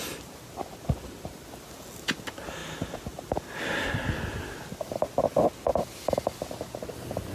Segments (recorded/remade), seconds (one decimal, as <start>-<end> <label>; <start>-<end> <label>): 0.0-7.3 recorded